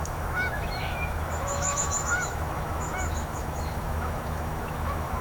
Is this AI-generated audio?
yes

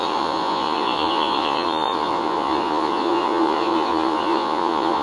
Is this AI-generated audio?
yes